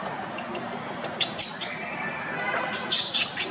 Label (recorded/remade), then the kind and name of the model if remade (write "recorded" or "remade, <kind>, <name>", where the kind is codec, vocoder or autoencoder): recorded